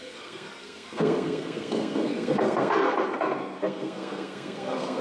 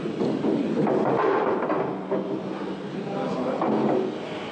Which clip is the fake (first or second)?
first